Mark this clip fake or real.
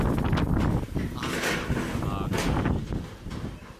real